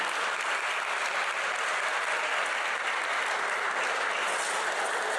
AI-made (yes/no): no